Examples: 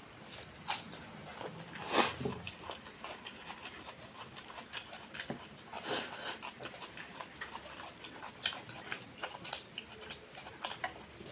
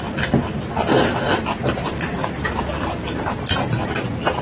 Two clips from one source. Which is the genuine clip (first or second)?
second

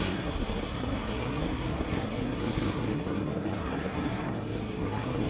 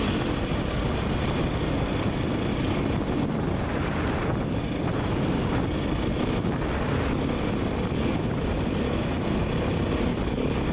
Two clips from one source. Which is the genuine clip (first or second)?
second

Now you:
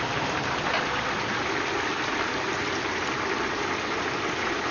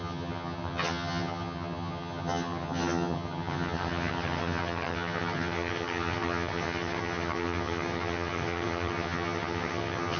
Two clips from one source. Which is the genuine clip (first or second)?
first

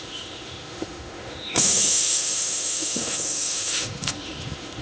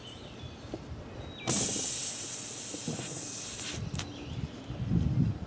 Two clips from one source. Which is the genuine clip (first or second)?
second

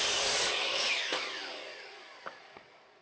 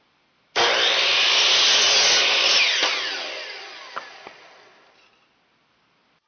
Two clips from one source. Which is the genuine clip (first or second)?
second